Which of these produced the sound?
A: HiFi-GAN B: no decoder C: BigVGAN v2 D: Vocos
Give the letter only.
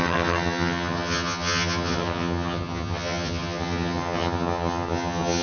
A